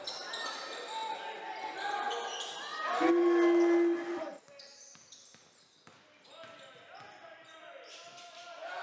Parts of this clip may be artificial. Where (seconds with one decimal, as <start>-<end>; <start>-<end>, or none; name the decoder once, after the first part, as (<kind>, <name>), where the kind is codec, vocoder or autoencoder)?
4.1-7.6 (vocoder, BigVGAN v2)